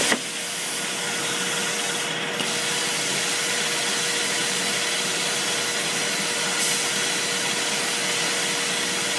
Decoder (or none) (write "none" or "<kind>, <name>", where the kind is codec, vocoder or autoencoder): none